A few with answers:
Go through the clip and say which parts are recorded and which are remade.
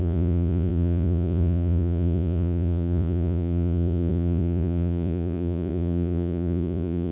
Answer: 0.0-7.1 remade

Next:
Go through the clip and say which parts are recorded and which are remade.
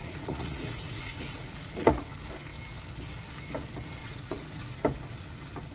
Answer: 0.0-2.1 remade; 2.1-4.0 recorded; 4.0-4.7 remade; 4.7-5.7 recorded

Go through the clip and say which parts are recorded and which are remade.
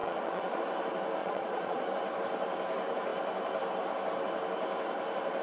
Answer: 0.0-0.6 remade; 0.6-1.2 recorded; 1.2-1.8 remade; 1.8-5.4 recorded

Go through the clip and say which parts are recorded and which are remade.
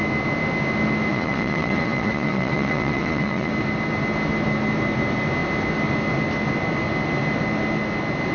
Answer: 0.0-1.1 recorded; 1.1-3.5 remade; 3.5-8.3 recorded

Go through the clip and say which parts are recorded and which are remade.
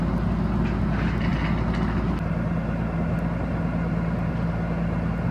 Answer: 0.0-5.3 recorded